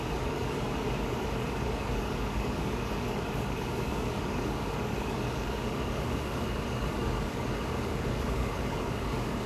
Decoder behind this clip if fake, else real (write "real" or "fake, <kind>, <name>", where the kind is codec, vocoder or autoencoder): fake, codec, DAC